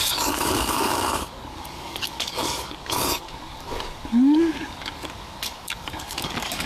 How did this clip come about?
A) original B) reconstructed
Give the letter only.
B